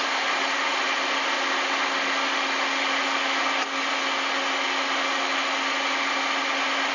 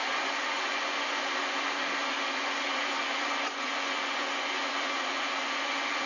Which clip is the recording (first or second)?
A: first